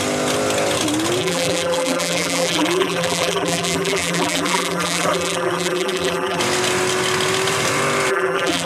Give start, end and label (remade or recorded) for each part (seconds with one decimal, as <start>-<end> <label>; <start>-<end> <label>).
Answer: 0.0-1.2 recorded; 1.2-6.4 remade; 6.4-8.1 recorded; 8.1-8.7 remade